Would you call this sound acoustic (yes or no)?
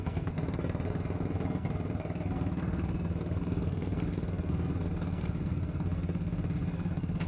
no